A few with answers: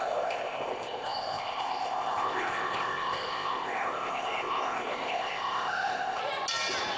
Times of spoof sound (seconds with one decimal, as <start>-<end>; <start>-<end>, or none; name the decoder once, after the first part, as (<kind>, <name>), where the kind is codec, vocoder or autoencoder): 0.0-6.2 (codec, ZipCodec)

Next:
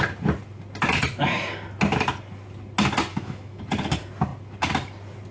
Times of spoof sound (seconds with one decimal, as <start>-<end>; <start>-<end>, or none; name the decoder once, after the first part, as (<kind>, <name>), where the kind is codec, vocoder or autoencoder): 3.1-3.6 (autoencoder, DAC-VAE)

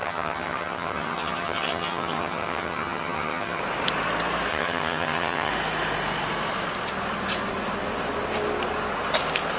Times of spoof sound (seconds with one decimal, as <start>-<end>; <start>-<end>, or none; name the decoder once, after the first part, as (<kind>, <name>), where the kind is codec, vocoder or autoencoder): 0.0-3.6 (vocoder, HiFi-GAN); 4.5-5.5

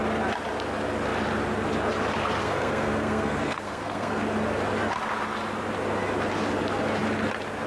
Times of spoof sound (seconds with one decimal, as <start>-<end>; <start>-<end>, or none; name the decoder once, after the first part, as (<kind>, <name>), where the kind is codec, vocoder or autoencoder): 2.4-4.2 (codec, SNAC)

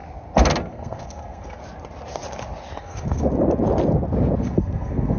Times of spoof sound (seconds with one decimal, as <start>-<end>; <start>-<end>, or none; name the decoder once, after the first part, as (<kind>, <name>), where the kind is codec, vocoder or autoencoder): 0.6-1.6 (codec, SNAC); 2.8-3.3; 4.4-5.2